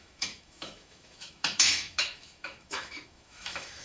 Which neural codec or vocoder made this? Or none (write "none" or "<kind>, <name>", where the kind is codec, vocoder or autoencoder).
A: autoencoder, DAC-VAE